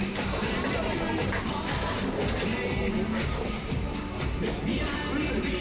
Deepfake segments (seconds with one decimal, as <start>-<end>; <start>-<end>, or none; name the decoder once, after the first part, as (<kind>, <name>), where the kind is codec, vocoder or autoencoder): none